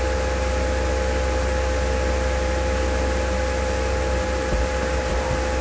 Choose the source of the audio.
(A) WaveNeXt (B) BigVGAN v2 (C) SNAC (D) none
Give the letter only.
D